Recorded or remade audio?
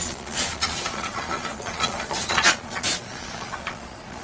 remade